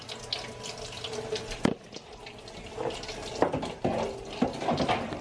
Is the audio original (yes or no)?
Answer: yes